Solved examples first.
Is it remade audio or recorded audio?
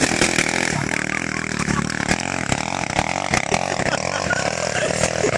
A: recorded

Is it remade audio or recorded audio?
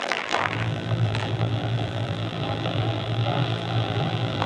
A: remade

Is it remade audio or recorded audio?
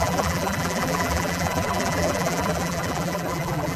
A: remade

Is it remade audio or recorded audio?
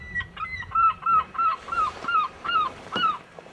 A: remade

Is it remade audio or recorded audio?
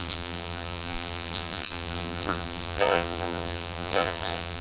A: remade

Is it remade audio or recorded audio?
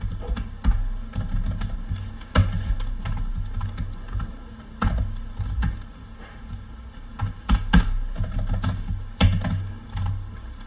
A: recorded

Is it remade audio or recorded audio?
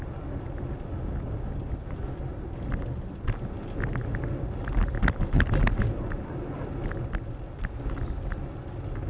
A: recorded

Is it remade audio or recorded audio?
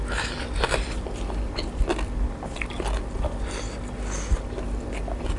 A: recorded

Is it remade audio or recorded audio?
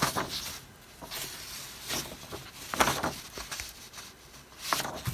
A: recorded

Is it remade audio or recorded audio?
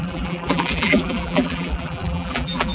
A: remade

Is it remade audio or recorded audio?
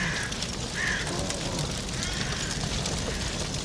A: recorded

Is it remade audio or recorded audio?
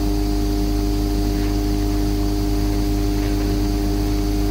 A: recorded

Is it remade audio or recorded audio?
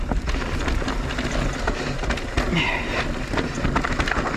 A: recorded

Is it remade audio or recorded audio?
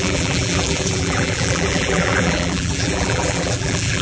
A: remade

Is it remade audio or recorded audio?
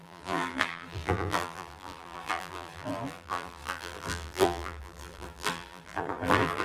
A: remade